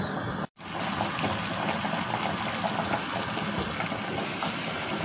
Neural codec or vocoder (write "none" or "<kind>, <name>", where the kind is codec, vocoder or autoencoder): none